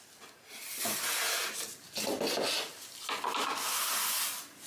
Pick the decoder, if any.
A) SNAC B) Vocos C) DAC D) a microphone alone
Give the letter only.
D